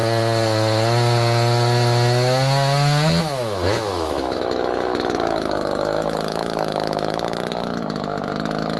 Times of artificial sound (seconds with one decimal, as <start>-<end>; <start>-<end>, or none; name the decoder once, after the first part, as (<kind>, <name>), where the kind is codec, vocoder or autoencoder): 3.2-8.8 (autoencoder, DAC-VAE)